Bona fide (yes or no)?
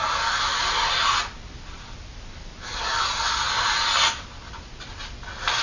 yes